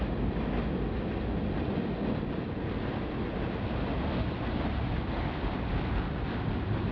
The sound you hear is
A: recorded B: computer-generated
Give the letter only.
A